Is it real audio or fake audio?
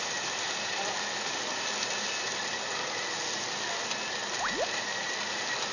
real